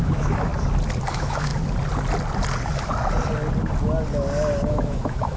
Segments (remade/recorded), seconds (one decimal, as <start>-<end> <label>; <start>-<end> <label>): 0.0-0.5 remade; 0.5-1.1 recorded; 1.1-1.5 remade; 1.5-4.7 recorded; 4.7-5.4 remade